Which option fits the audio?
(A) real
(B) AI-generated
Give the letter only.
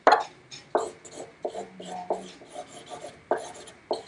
A